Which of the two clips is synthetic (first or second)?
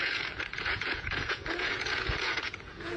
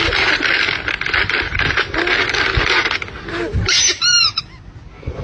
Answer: first